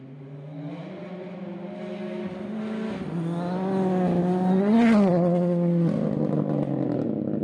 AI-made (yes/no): no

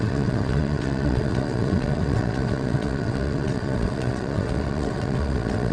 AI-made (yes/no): yes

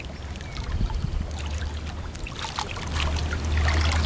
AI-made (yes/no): no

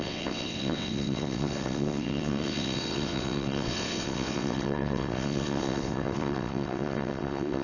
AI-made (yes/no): yes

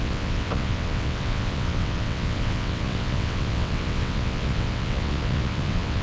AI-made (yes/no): yes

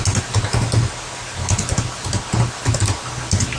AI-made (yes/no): no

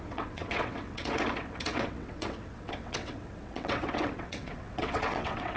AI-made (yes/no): yes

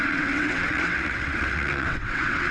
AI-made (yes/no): yes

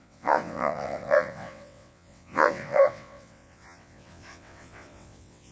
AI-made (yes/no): yes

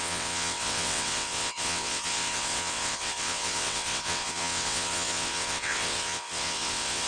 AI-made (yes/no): yes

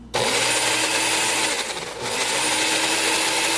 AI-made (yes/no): no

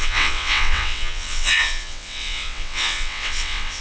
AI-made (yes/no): yes